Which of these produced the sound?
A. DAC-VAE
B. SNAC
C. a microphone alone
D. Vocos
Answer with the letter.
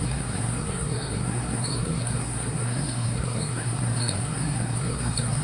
B